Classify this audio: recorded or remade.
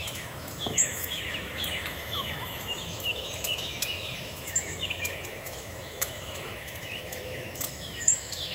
remade